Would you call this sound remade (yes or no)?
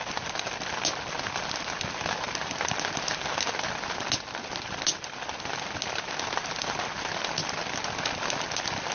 no